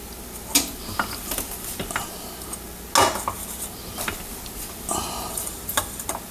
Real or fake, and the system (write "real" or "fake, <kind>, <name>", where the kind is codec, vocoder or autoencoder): real